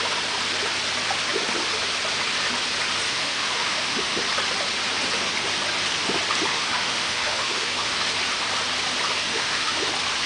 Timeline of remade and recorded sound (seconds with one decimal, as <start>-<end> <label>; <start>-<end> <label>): 0.0-3.1 recorded; 3.1-4.2 remade; 4.2-6.5 recorded; 6.5-7.9 remade; 7.9-9.3 recorded; 9.3-9.9 remade; 9.9-10.3 recorded